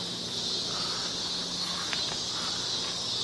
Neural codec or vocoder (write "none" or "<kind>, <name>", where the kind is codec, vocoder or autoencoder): none